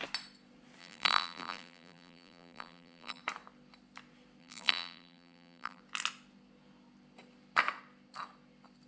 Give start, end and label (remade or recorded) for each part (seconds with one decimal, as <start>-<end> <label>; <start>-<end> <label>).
0.0-0.8 recorded; 0.8-3.2 remade; 3.2-4.4 recorded; 4.4-5.8 remade; 5.8-8.9 recorded